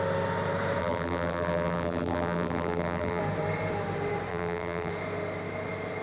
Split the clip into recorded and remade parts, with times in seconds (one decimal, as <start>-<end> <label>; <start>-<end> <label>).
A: 0.0-0.8 recorded; 0.8-3.2 remade; 3.2-4.3 recorded; 4.3-4.9 remade; 4.9-6.0 recorded